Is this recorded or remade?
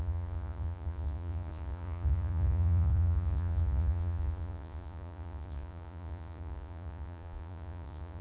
remade